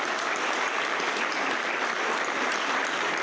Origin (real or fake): fake